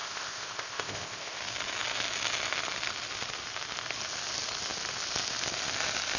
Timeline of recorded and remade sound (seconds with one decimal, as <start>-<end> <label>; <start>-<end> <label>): 0.0-1.4 remade; 1.4-6.2 recorded